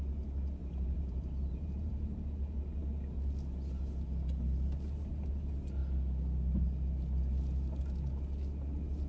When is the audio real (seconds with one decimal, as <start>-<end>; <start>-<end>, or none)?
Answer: 0.0-0.6; 2.1-9.1